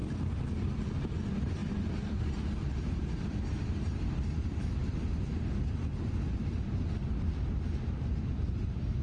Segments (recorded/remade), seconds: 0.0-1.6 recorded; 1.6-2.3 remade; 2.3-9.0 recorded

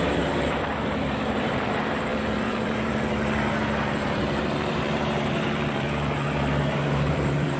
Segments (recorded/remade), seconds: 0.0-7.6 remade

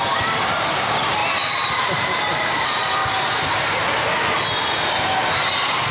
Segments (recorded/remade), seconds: 0.0-1.2 remade; 1.2-1.8 recorded; 1.8-3.0 remade; 3.0-5.4 recorded; 5.4-5.9 remade